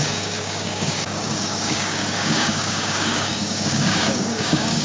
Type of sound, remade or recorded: remade